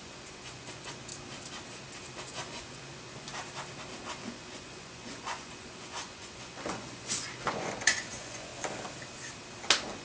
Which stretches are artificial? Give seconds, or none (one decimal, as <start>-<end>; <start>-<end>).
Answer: 0.0-1.1; 2.3-3.3; 4.1-8.5